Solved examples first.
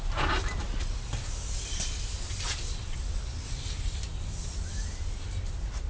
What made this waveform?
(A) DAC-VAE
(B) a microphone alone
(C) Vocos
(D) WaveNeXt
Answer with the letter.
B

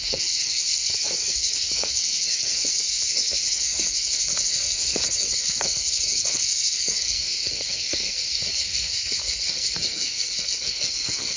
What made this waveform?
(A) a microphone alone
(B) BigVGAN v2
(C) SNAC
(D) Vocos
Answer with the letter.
C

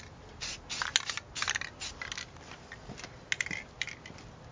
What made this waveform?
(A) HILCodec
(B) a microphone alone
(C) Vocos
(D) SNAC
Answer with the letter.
B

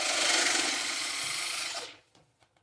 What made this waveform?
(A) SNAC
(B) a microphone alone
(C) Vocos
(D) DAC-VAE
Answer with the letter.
C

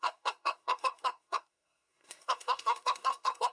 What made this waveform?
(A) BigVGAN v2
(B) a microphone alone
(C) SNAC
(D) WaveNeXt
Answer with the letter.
C